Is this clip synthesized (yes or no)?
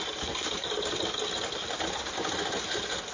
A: no